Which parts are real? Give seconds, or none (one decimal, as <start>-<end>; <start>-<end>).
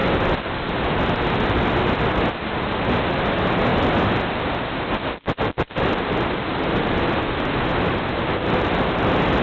0.0-9.4